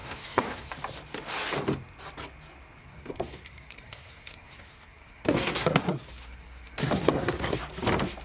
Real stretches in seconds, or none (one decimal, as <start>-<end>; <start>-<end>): 0.7-2.8; 7.6-8.2